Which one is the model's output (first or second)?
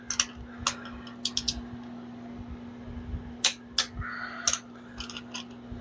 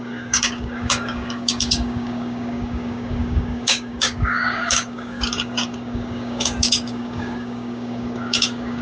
second